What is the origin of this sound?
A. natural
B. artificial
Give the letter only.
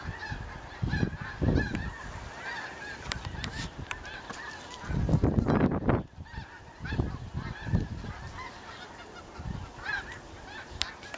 A